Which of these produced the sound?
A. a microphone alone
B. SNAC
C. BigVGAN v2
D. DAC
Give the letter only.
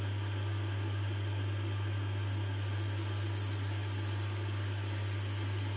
A